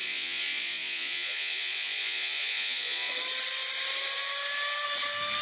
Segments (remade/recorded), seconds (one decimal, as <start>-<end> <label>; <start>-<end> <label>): 0.0-3.1 remade; 3.1-5.4 recorded